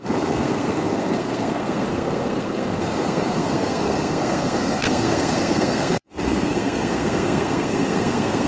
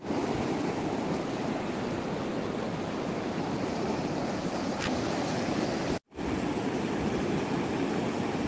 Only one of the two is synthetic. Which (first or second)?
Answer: first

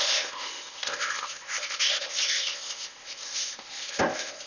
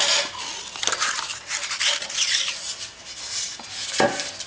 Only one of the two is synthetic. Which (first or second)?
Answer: first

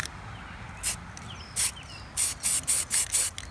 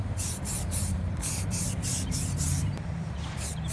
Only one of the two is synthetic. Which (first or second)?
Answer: second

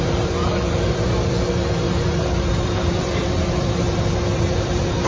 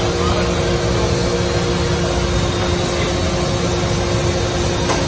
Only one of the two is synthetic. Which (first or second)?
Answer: first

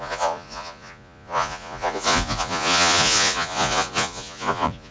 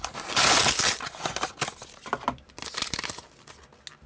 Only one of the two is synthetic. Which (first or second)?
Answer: first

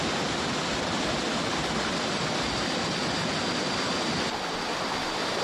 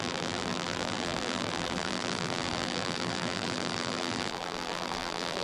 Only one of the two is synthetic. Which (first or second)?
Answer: second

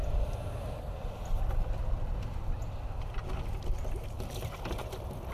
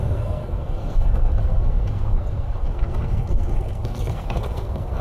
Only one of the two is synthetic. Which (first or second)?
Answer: second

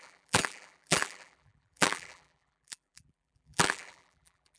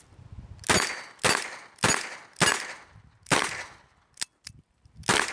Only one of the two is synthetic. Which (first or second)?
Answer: first